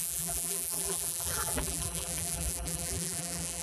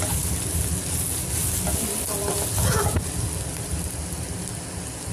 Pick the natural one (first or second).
second